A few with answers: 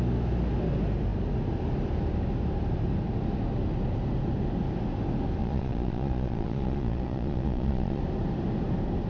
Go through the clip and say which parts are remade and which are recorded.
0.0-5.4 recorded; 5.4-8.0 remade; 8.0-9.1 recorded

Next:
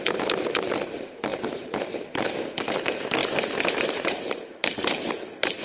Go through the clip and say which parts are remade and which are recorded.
0.0-3.2 remade; 3.2-3.7 recorded; 3.7-5.6 remade

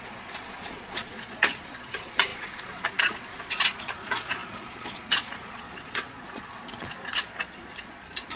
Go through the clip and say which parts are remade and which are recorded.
0.0-8.4 remade

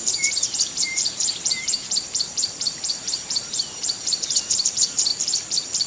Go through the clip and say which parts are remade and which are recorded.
0.0-5.1 remade; 5.1-5.9 recorded

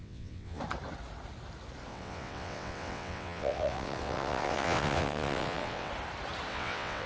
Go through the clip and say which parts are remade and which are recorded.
0.0-0.6 remade; 0.6-1.9 recorded; 1.9-5.9 remade; 5.9-6.5 recorded; 6.5-7.1 remade

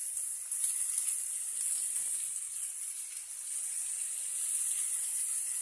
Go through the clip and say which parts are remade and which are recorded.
0.0-5.6 recorded

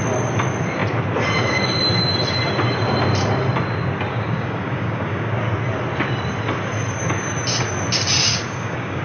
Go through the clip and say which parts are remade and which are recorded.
0.0-4.1 recorded; 4.1-5.3 remade; 5.3-8.3 recorded; 8.3-9.0 remade

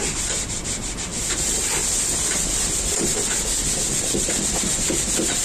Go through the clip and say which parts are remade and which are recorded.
0.0-5.4 recorded